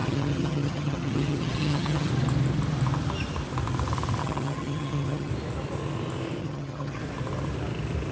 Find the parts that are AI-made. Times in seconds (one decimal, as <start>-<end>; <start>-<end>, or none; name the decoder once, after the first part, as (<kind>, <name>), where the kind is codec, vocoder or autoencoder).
0.0-2.1 (vocoder, HiFi-GAN); 4.2-5.3; 6.4-7.0